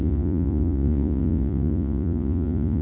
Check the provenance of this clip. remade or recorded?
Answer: remade